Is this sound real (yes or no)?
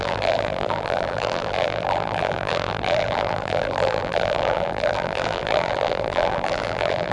no